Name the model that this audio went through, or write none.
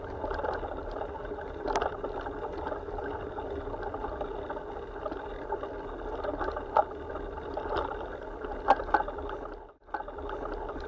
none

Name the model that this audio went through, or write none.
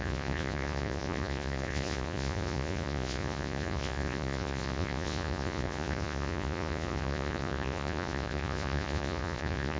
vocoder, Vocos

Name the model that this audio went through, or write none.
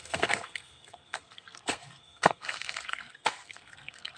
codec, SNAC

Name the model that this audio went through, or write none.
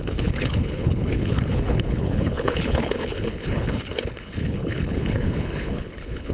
codec, HILCodec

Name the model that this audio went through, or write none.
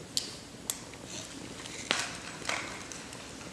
none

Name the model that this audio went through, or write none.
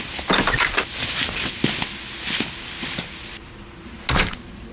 none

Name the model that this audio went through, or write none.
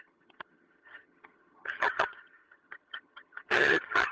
vocoder, HiFi-GAN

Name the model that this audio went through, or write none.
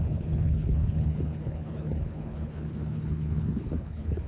codec, HILCodec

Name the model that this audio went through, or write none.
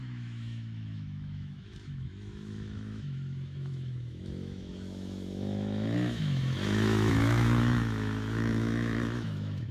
autoencoder, DAC-VAE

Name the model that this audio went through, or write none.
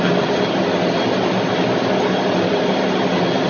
none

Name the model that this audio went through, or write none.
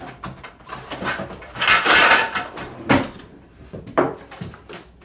vocoder, BigVGAN v2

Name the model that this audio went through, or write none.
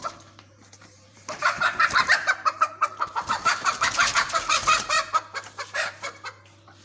vocoder, BigVGAN v2